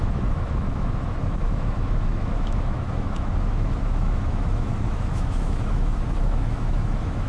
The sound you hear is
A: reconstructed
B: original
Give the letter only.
A